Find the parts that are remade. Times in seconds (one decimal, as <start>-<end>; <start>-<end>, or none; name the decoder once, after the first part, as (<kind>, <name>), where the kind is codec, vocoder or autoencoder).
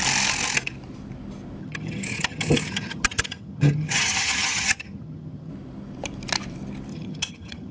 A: 1.6-5.5 (vocoder, HiFi-GAN); 6.9-7.7